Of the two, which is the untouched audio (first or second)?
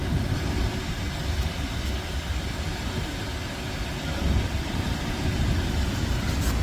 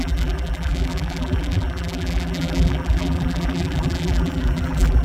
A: first